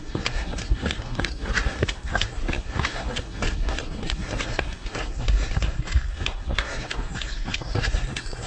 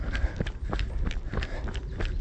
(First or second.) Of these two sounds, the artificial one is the first